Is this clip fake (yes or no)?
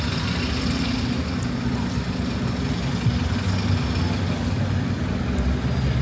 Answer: no